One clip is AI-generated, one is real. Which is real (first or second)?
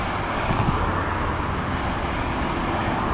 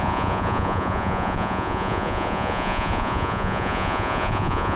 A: first